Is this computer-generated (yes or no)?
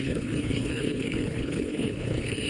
yes